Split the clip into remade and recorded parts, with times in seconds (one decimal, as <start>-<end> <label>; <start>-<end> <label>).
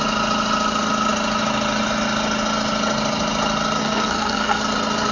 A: 0.0-3.8 recorded; 3.8-4.6 remade; 4.6-5.1 recorded